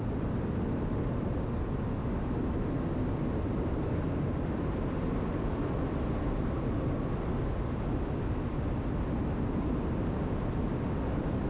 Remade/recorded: recorded